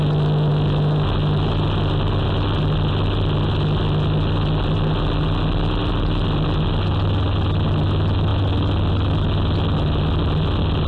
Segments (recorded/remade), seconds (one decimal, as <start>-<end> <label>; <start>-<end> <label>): 0.0-10.9 recorded